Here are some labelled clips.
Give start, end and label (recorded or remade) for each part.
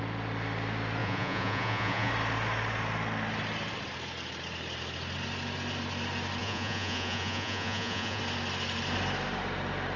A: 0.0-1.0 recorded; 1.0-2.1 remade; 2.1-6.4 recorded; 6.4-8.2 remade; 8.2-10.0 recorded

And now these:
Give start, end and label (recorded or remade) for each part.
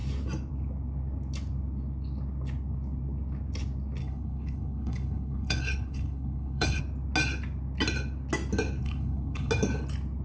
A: 0.0-4.0 recorded; 4.0-6.8 remade; 6.8-8.8 recorded; 8.8-9.5 remade; 9.5-10.2 recorded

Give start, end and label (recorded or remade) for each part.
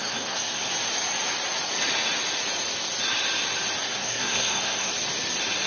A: 0.0-0.7 remade; 0.7-3.8 recorded; 3.8-4.9 remade; 4.9-5.7 recorded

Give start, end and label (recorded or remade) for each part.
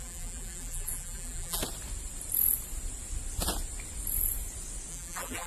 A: 0.0-1.6 remade; 1.6-4.9 recorded; 4.9-5.5 remade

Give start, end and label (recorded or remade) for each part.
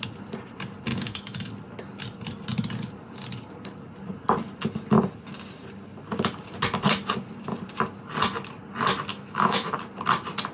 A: 0.0-0.9 recorded; 0.9-1.5 remade; 1.5-9.1 recorded; 9.1-9.7 remade; 9.7-10.5 recorded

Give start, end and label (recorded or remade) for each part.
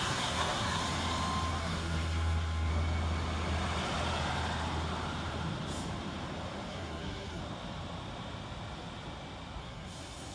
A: 0.0-0.8 remade; 0.8-1.6 recorded; 1.6-2.7 remade; 2.7-6.7 recorded; 6.7-7.4 remade; 7.4-9.6 recorded; 9.6-10.3 remade